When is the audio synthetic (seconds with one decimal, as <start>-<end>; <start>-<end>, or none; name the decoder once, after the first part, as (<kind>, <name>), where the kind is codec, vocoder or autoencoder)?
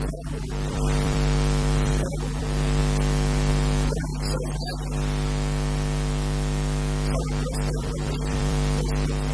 0.0-2.8 (vocoder, BigVGAN v2); 3.5-4.1; 7.2-9.3